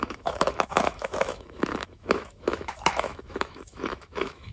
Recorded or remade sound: remade